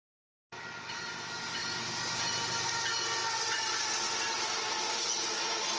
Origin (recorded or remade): recorded